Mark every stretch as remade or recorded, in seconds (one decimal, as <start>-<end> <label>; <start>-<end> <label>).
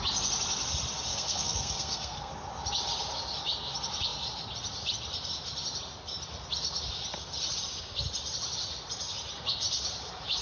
0.0-1.1 recorded; 1.1-2.3 remade; 2.3-10.4 recorded